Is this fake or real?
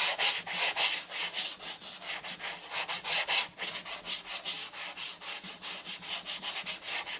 real